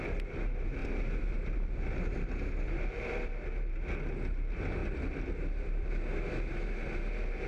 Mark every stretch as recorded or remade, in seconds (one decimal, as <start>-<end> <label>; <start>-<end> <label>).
0.0-0.8 recorded; 0.8-3.5 remade; 3.5-4.8 recorded; 4.8-5.9 remade; 5.9-7.5 recorded